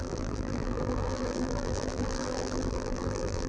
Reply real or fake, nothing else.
fake